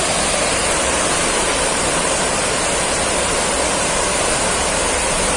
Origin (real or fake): real